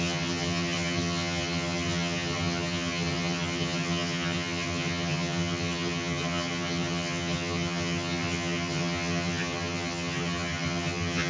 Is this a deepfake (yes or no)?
yes